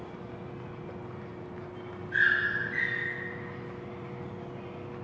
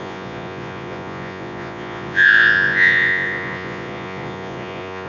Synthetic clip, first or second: second